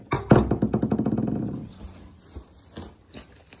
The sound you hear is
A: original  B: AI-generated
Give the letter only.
A